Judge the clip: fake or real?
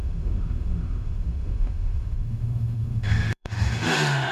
fake